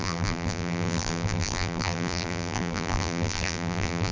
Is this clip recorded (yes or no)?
no